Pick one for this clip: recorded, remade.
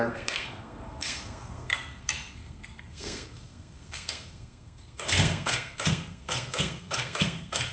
remade